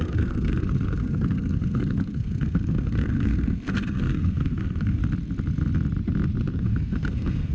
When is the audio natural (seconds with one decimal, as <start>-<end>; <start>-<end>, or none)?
5.0-6.5